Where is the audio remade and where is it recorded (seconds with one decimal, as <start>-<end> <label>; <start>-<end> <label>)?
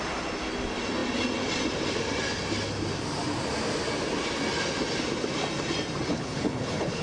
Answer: 0.0-6.1 recorded; 6.1-7.0 remade